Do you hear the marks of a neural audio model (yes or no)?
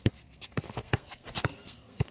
yes